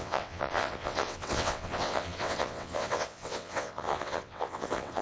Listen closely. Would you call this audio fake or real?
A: fake